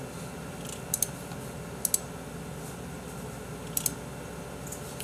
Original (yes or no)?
yes